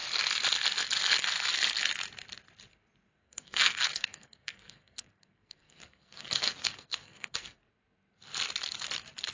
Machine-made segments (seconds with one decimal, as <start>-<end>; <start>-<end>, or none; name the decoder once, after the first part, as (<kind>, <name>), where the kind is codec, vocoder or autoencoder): 3.2-7.7 (codec, SNAC)